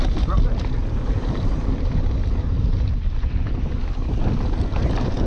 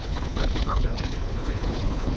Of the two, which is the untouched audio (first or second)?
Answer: first